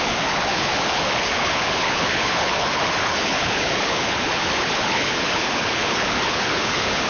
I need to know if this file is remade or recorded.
remade